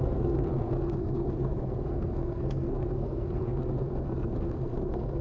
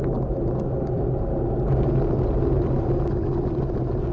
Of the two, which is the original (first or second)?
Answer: second